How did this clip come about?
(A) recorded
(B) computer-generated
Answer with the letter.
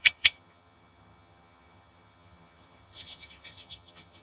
B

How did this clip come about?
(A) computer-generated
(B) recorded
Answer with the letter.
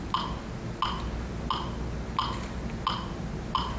B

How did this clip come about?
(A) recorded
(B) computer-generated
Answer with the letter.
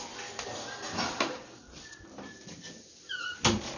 A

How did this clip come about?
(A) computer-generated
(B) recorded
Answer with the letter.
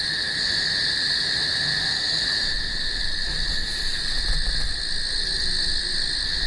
B